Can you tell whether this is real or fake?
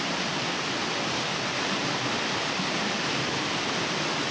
real